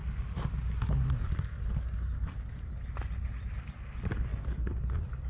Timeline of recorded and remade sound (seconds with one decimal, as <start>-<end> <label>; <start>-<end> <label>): 0.0-5.3 recorded